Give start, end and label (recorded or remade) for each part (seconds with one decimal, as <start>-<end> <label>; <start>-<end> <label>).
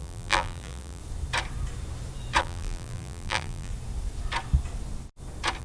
0.0-1.0 remade; 1.0-2.4 recorded; 2.4-3.7 remade; 3.7-5.6 recorded